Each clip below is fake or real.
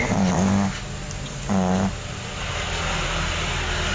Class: real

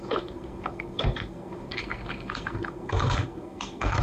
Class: fake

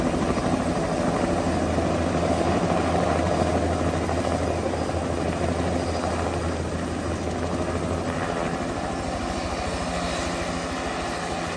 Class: real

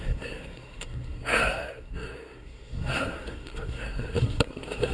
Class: fake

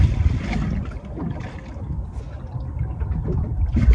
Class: real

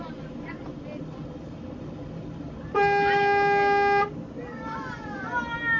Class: real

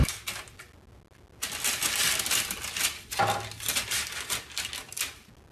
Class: real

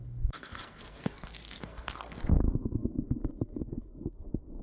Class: fake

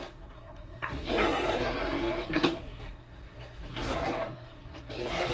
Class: fake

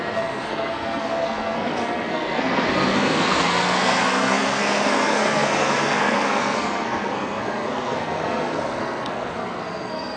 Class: fake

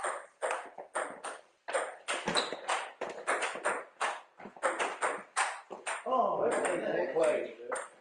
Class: real